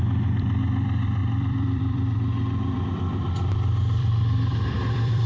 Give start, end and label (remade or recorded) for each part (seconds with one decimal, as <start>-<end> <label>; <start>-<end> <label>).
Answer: 0.0-5.3 remade